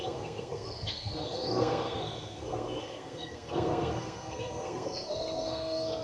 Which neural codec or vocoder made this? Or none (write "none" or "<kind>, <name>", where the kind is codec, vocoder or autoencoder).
codec, SNAC